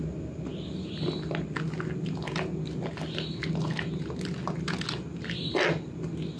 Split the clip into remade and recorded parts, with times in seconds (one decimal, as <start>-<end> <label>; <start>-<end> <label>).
0.0-6.4 recorded